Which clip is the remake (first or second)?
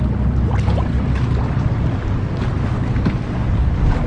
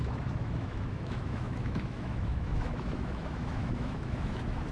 second